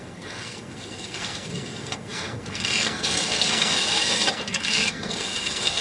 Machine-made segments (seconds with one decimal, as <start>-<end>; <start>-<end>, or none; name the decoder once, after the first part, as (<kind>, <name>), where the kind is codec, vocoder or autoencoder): 0.0-5.8 (codec, SNAC)